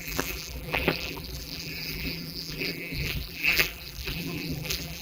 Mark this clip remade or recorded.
remade